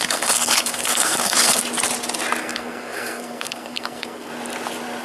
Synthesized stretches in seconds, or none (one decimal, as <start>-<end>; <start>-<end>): 0.0-1.6; 2.4-4.3